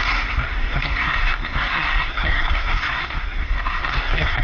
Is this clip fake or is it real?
fake